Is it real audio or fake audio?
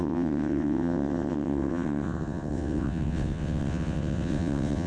fake